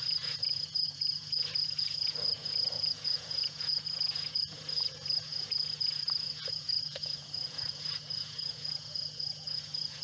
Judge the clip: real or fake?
fake